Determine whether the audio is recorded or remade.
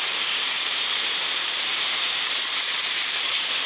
remade